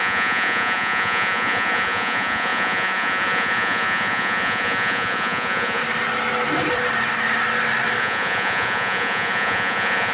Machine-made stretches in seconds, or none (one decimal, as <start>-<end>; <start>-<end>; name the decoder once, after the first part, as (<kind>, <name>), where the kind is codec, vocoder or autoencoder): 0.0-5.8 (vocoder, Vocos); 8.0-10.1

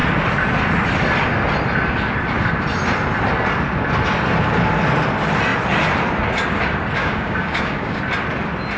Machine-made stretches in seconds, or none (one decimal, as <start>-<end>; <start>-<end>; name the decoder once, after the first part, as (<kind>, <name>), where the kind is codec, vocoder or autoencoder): 7.0-8.0 (codec, DAC)

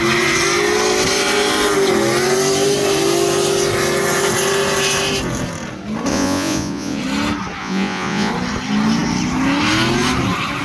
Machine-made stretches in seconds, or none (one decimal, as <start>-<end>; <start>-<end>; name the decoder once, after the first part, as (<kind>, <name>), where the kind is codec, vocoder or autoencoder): 6.1-7.0 (vocoder, Vocos); 7.6-8.3

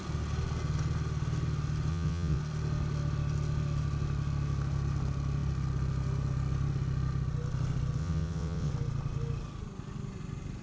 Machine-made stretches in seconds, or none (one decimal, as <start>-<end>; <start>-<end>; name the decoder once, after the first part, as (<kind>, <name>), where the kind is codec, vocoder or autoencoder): 1.9-2.4 (vocoder, WaveNeXt); 8.0-8.7